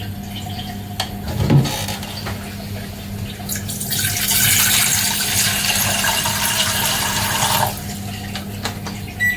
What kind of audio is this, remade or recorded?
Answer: recorded